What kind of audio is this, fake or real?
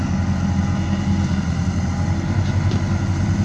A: real